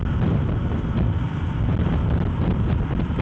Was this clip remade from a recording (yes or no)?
no